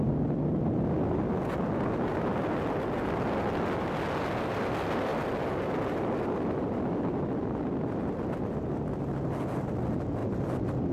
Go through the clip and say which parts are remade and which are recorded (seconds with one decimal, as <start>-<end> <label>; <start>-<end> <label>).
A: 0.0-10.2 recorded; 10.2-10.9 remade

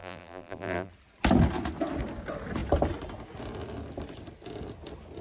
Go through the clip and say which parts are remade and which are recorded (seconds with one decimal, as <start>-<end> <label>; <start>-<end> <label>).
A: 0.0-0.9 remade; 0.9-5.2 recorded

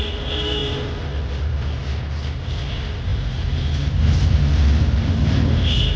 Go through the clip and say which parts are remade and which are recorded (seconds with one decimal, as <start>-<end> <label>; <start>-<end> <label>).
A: 0.0-3.1 recorded; 3.1-4.0 remade; 4.0-6.0 recorded